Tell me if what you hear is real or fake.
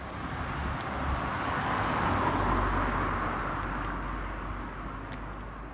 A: real